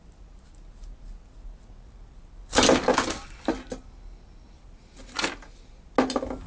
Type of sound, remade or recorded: recorded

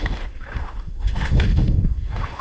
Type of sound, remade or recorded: remade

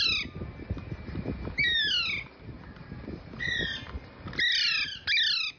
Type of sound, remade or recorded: recorded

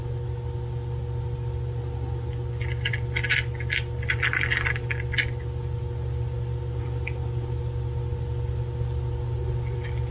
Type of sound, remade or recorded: recorded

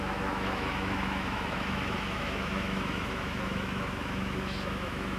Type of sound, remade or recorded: remade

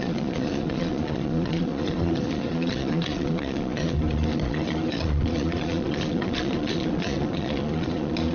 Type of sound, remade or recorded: remade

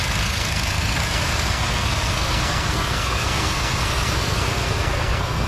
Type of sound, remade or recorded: remade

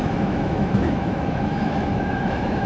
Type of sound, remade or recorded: remade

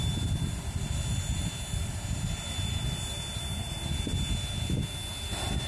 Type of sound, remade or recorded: recorded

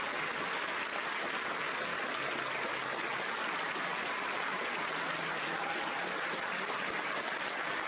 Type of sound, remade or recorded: recorded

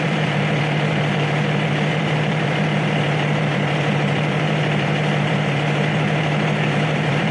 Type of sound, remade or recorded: remade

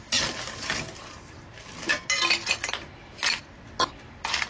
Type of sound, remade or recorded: recorded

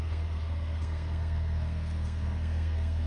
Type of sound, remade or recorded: remade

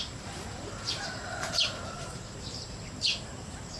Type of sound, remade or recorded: remade